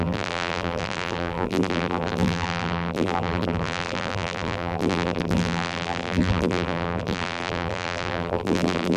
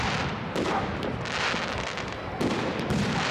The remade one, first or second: first